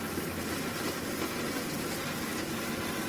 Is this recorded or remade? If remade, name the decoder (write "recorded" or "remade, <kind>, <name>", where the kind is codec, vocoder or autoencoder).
recorded